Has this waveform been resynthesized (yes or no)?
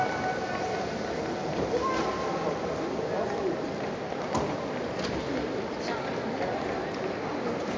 no